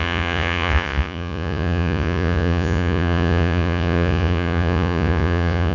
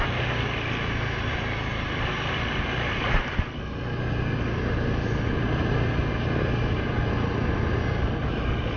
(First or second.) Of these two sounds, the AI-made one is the first